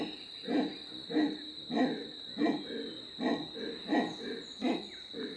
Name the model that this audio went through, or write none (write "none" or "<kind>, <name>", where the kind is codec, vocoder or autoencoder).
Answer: none